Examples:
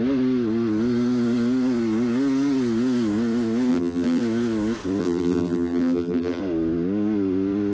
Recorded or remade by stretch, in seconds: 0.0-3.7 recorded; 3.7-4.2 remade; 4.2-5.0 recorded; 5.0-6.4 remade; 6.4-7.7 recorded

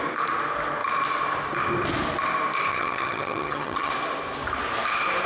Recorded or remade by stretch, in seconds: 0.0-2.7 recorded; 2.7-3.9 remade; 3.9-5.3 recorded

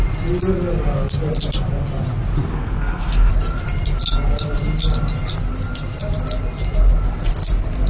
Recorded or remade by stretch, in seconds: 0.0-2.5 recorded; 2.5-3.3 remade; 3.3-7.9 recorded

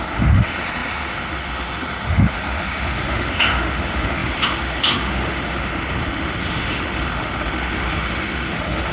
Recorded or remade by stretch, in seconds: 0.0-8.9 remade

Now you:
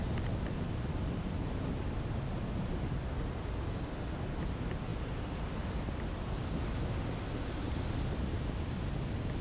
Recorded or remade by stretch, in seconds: 0.0-9.4 recorded

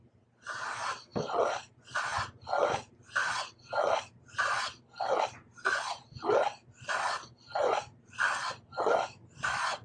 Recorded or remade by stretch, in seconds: 0.0-9.8 recorded

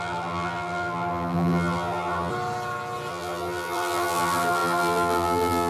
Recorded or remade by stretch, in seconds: 0.0-2.3 remade; 2.3-3.1 recorded; 3.1-5.7 remade

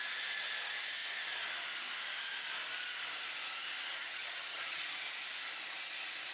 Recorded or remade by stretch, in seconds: 0.0-4.0 recorded; 4.0-4.8 remade; 4.8-6.3 recorded